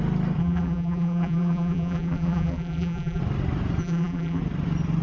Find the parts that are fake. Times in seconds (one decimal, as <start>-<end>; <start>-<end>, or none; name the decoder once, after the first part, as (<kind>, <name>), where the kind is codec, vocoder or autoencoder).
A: 0.4-3.2 (vocoder, BigVGAN v2); 3.8-4.4